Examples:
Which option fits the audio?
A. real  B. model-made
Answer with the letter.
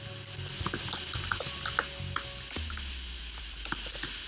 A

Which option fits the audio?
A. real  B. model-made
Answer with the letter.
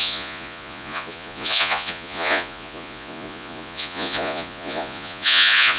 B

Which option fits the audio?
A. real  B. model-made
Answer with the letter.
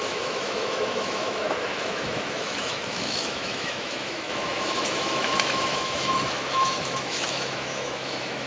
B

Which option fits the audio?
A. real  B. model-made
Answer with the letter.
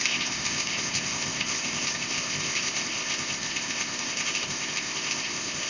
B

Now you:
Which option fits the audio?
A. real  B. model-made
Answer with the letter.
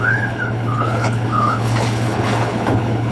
B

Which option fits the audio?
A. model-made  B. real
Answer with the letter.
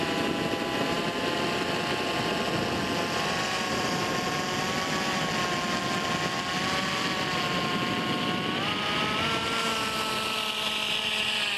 B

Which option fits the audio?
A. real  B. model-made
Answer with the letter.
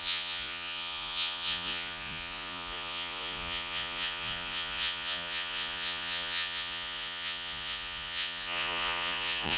B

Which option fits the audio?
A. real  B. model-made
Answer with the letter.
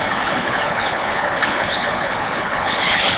B